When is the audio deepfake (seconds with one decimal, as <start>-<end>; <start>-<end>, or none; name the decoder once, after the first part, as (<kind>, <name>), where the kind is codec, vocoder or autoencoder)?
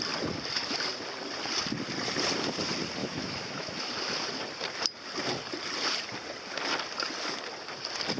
3.0-3.9 (autoencoder, DAC-VAE)